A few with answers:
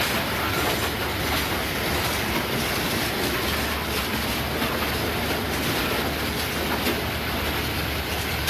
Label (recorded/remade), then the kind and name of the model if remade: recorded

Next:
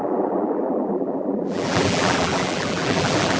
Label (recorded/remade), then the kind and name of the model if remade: remade, vocoder, BigVGAN v2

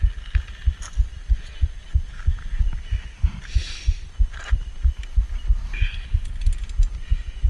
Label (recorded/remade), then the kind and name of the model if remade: recorded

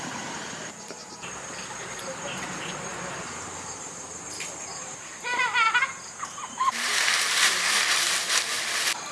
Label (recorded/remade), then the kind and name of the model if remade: remade, vocoder, BigVGAN v2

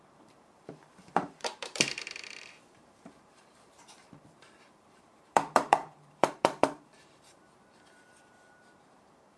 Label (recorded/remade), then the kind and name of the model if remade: remade, vocoder, BigVGAN v2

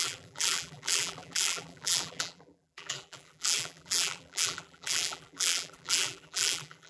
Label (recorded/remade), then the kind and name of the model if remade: remade, vocoder, BigVGAN v2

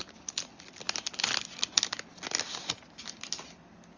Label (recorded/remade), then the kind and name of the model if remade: recorded